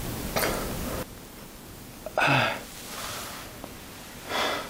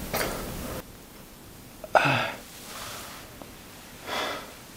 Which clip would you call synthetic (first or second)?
second